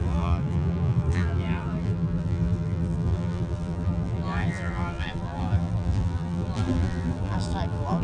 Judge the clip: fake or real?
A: fake